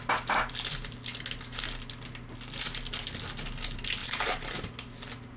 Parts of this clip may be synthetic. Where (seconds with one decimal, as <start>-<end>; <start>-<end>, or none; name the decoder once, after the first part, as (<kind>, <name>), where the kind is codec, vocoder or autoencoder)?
4.0-4.7 (vocoder, BigVGAN v2)